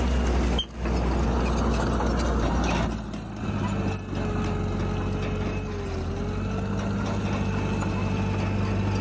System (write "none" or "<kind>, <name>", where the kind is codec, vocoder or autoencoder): none